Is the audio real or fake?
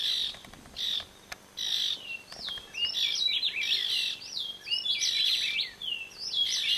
fake